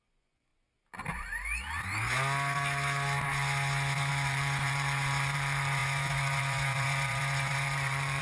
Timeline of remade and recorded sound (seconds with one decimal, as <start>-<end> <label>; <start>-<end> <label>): 0.0-0.5 remade; 0.5-4.1 recorded; 4.1-8.2 remade